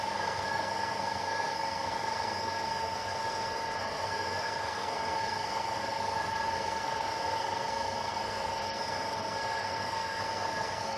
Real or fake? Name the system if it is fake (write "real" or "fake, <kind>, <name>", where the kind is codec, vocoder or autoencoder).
fake, codec, SNAC